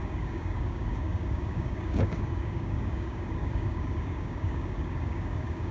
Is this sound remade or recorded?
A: remade